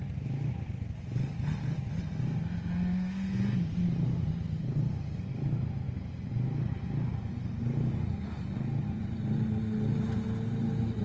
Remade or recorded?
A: recorded